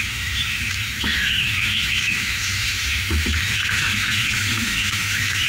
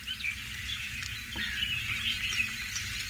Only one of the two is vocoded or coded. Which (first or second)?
first